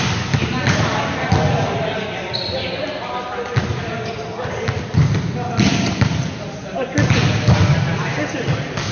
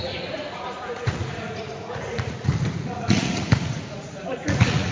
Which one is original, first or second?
first